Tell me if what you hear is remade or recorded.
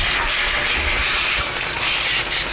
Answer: recorded